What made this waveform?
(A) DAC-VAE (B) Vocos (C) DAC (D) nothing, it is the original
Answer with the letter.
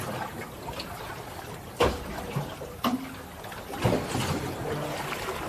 D